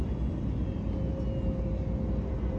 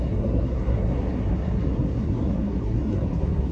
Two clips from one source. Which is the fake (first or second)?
second